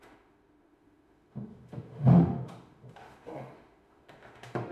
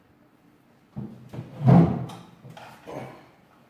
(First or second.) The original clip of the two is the second